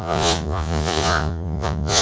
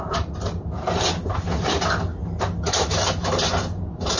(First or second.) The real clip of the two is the second